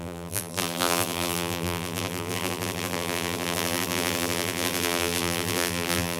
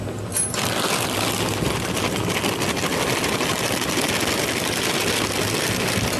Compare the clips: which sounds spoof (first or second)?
first